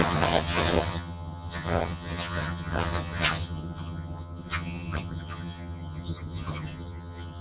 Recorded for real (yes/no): no